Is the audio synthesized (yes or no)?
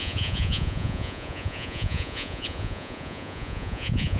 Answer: yes